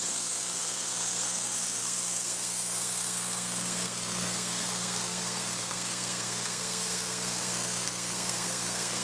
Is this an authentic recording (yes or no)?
no